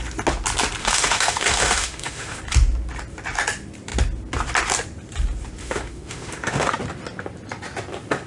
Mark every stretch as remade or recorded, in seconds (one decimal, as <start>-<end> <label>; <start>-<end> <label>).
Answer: 0.0-0.8 recorded; 0.8-2.4 remade; 2.4-5.6 recorded; 5.6-6.7 remade; 6.7-8.3 recorded